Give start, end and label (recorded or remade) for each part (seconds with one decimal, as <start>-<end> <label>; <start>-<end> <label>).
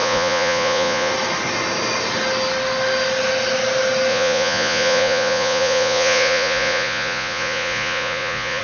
0.0-1.1 remade; 1.1-4.1 recorded; 4.1-8.6 remade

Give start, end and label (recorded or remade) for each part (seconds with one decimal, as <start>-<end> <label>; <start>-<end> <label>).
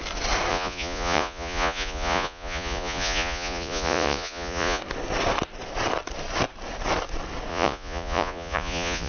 0.0-0.5 recorded; 0.5-4.8 remade; 4.8-7.5 recorded; 7.5-9.1 remade